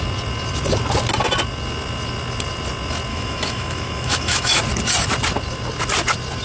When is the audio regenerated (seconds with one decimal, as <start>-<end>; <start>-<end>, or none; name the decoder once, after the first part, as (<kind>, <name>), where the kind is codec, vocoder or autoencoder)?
3.1-4.6 (autoencoder, DAC-VAE)